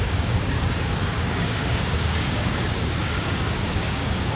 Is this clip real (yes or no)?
no